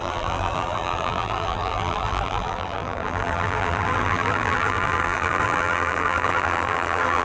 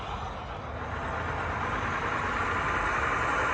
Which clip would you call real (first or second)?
second